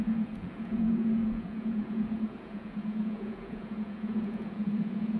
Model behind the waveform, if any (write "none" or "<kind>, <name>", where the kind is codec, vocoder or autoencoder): vocoder, Vocos